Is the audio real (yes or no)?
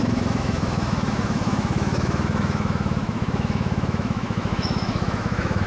no